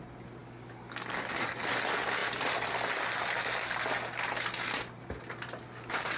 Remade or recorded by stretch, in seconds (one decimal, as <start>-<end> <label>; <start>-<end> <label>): 0.0-0.4 recorded; 0.4-1.7 remade; 1.7-6.2 recorded